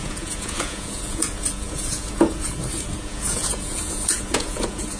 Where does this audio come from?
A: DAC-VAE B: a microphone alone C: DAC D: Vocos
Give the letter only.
D